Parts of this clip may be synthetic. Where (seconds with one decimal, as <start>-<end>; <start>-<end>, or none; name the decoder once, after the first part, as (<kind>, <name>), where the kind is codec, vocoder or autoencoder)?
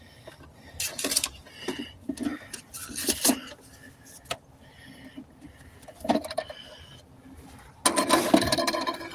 none